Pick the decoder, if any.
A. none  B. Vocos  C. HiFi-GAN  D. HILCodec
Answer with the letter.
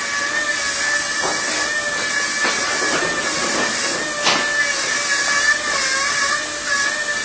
A